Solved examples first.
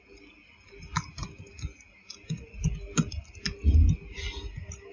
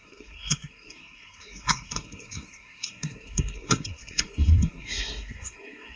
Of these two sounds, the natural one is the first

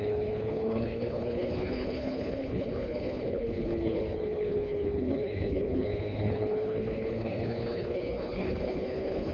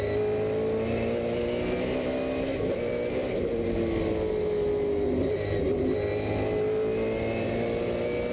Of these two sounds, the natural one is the second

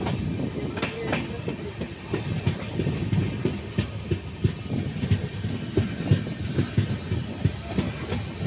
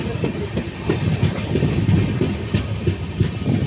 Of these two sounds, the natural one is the first